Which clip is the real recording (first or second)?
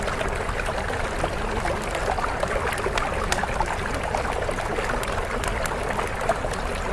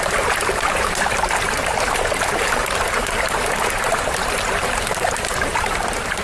first